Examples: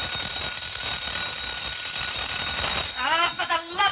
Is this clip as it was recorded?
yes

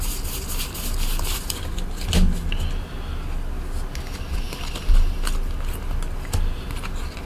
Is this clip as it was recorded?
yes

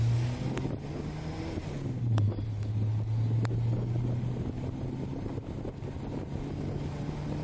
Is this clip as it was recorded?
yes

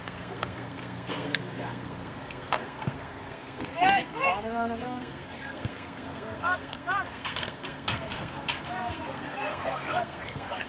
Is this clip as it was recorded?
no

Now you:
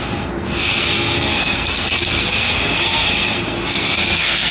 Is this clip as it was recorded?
no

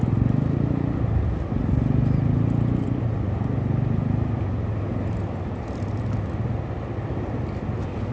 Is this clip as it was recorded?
yes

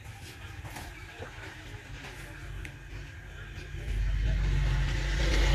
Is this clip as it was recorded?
yes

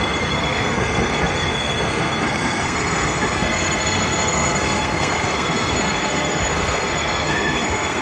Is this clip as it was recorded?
no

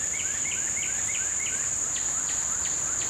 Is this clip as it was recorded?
yes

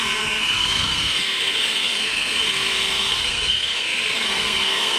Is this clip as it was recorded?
no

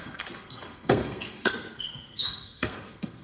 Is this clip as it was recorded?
no